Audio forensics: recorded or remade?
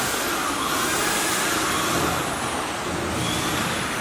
recorded